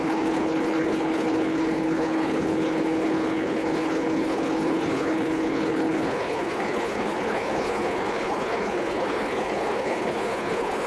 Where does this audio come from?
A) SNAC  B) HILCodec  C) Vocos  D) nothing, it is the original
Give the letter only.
B